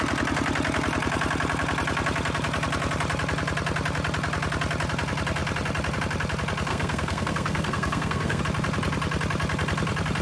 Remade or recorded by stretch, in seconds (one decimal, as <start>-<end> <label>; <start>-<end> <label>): 0.0-6.7 recorded; 6.7-8.4 remade; 8.4-10.2 recorded